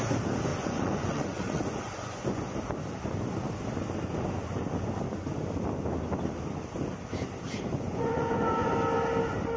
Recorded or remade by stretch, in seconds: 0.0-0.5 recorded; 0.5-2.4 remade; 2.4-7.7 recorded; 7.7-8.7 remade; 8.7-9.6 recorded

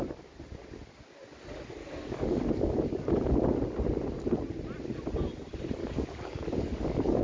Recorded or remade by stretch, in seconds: 0.0-1.8 recorded; 1.8-2.7 remade; 2.7-5.8 recorded; 5.8-7.2 remade

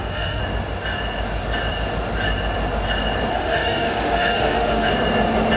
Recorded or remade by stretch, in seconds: 0.0-0.4 remade; 0.4-3.3 recorded; 3.3-4.9 remade; 4.9-5.6 recorded

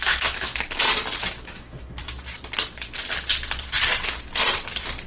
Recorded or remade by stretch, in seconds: 0.0-0.5 remade; 0.5-1.3 recorded; 1.3-2.0 remade; 2.0-5.1 recorded

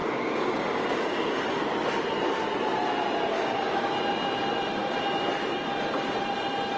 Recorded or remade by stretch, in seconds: 0.0-1.6 remade; 1.6-3.3 recorded; 3.3-3.9 remade; 3.9-6.8 recorded

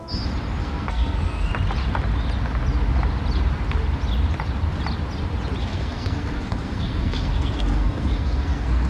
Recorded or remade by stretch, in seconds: 0.0-0.6 recorded; 0.6-1.5 remade; 1.5-5.6 recorded; 5.6-8.9 remade